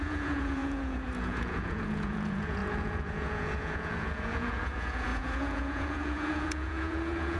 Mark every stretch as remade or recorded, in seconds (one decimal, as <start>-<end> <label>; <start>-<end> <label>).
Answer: 0.0-7.4 remade